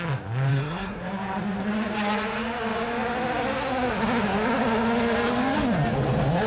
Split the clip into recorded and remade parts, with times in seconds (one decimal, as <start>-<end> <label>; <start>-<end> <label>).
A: 0.0-0.5 recorded; 0.5-1.0 remade; 1.0-6.5 recorded